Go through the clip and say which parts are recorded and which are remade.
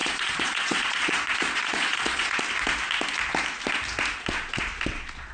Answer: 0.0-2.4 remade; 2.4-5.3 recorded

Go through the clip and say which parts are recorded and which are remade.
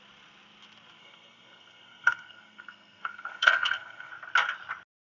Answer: 0.0-1.0 recorded; 1.0-4.1 remade; 4.1-5.1 recorded